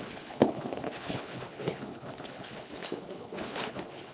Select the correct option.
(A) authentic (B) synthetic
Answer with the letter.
B